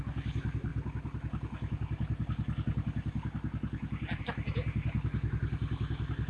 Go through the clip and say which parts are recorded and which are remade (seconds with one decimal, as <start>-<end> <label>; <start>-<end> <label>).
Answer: 0.0-6.3 recorded